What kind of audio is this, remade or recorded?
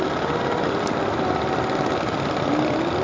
recorded